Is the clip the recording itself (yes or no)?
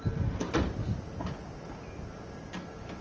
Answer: yes